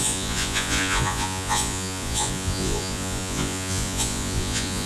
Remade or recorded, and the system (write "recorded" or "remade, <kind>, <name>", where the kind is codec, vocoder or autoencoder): remade, vocoder, Vocos